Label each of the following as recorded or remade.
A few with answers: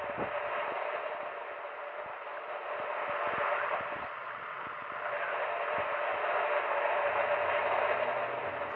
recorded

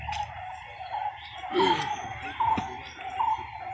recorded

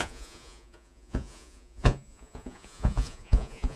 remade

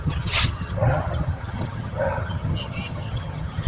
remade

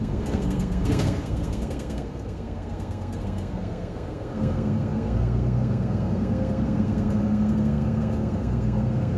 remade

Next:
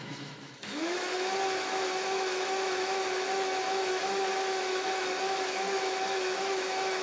remade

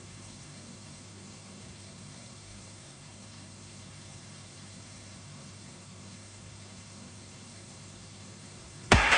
remade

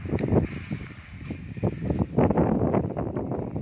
recorded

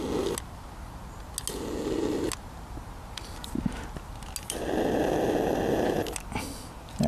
recorded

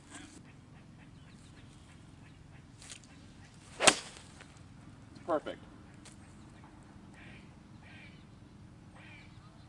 recorded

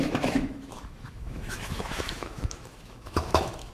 remade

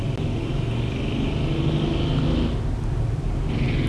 recorded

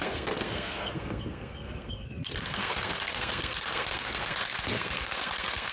remade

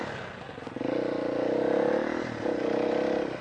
recorded